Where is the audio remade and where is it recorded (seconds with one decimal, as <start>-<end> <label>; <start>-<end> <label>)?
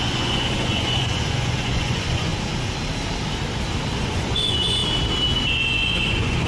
0.0-2.3 remade; 2.3-4.0 recorded; 4.0-4.8 remade; 4.8-5.5 recorded; 5.5-6.5 remade